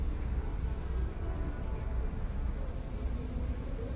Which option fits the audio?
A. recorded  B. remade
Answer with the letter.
A